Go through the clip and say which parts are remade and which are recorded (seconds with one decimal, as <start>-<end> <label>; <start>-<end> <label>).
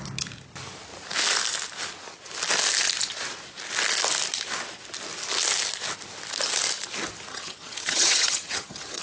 0.0-7.3 recorded; 7.3-9.0 remade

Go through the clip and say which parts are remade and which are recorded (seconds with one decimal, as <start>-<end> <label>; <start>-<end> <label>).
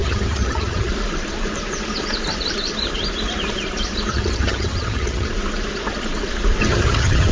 0.0-0.9 remade; 0.9-4.1 recorded; 4.1-5.3 remade; 5.3-6.6 recorded; 6.6-7.3 remade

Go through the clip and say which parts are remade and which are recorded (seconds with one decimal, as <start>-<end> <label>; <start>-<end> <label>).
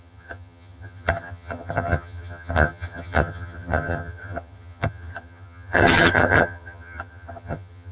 0.0-7.9 remade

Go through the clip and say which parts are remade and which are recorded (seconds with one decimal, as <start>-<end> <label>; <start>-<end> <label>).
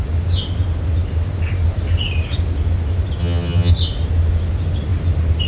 0.0-3.2 recorded; 3.2-3.7 remade; 3.7-5.5 recorded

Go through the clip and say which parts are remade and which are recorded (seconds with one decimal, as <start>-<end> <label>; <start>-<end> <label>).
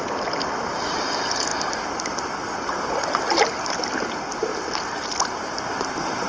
0.0-6.3 recorded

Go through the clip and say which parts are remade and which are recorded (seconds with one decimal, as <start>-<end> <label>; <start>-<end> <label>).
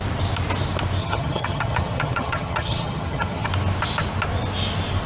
0.0-1.0 recorded; 1.0-3.5 remade; 3.5-5.1 recorded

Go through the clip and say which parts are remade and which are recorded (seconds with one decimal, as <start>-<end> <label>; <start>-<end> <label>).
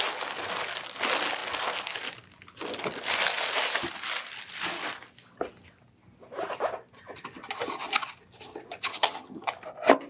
0.0-8.9 recorded; 8.9-9.4 remade; 9.4-10.1 recorded